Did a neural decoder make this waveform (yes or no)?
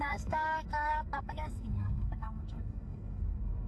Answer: yes